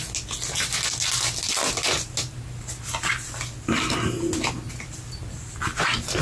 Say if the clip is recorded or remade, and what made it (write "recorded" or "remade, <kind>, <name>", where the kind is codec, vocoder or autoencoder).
recorded